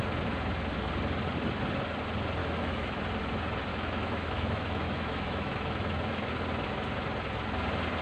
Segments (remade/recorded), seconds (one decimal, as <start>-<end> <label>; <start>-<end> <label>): 0.0-2.4 recorded; 2.4-3.0 remade; 3.0-3.7 recorded; 3.7-6.3 remade; 6.3-8.0 recorded